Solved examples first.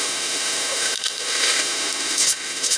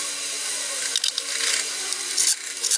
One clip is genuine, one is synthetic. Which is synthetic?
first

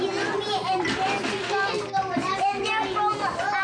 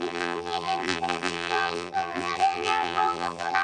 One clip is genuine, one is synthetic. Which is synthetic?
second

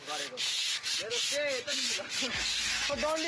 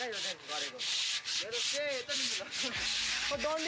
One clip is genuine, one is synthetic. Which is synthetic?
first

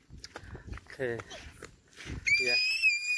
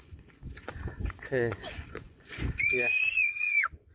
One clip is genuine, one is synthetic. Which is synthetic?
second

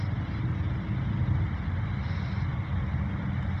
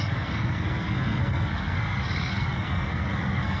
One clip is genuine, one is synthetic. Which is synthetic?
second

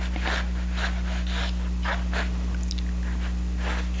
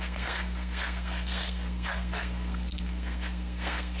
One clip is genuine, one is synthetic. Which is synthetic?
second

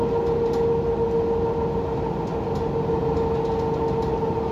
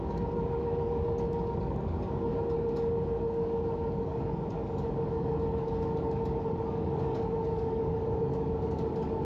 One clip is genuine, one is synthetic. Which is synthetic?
second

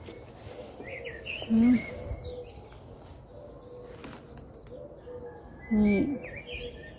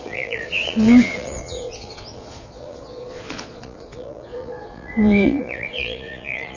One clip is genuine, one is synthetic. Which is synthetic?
second